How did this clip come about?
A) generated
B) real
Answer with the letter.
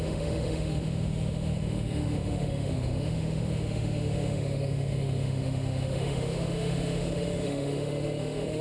A